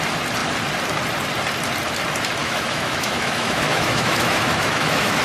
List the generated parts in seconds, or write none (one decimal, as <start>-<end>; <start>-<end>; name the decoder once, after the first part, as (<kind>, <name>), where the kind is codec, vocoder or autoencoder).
2.4-5.2 (autoencoder, DAC-VAE)